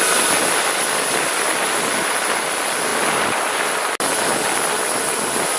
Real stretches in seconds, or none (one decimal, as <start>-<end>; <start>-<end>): 0.0-5.6

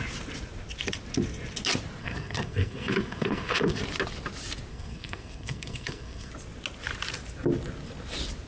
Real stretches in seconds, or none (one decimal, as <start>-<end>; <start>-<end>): 0.0-2.0; 3.8-4.7; 6.3-8.5

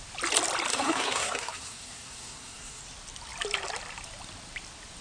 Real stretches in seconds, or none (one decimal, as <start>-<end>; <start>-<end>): 0.0-0.7; 2.8-5.0